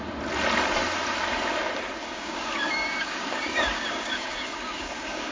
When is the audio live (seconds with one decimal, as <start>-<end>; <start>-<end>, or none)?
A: 0.0-2.0